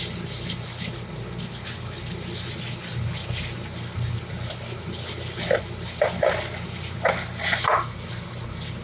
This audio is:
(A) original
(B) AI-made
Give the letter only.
A